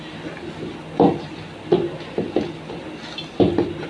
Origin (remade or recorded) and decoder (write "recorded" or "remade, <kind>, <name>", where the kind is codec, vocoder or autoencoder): recorded